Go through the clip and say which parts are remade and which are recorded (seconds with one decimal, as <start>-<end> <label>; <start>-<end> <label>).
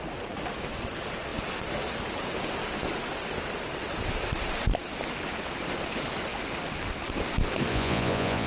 0.0-7.7 recorded; 7.7-8.5 remade